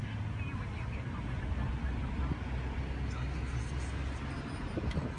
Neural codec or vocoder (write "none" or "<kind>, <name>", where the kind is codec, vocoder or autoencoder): none